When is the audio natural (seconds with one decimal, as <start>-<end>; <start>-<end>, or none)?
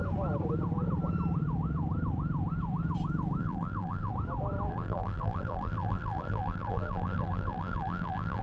0.0-3.4; 4.1-4.7